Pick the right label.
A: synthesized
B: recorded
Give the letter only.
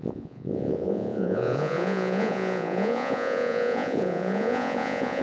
A